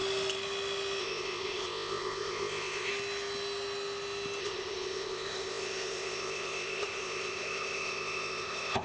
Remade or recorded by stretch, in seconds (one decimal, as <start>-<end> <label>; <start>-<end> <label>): 0.0-1.0 recorded; 1.0-2.9 remade; 2.9-4.4 recorded; 4.4-8.8 remade